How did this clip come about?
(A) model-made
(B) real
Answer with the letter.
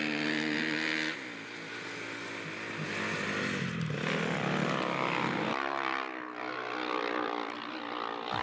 B